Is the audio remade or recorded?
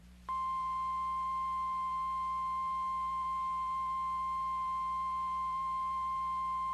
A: remade